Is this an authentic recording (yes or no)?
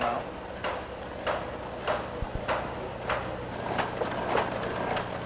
yes